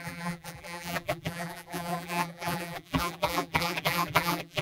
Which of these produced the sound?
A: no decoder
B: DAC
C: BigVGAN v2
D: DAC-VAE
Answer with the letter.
C